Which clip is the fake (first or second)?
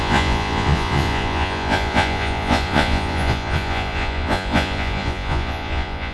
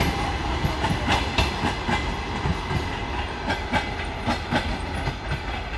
first